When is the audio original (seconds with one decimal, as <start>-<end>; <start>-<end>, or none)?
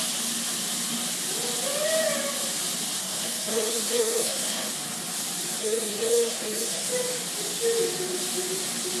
0.0-3.0; 4.7-5.6; 6.9-9.0